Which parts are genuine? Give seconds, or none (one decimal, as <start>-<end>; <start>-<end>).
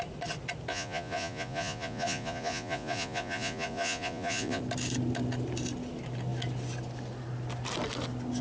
0.0-0.7; 4.6-8.4